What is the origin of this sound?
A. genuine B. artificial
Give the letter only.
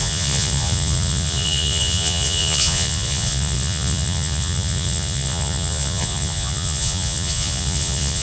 B